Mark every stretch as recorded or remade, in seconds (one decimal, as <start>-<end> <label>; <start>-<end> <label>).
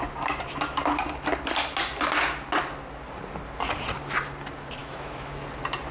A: 0.0-4.8 recorded; 4.8-5.3 remade; 5.3-5.9 recorded